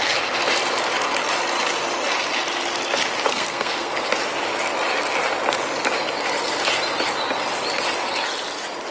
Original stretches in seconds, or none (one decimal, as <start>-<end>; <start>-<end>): 0.0-3.3; 3.9-8.9